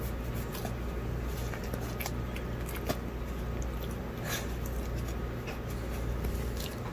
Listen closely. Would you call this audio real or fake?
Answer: real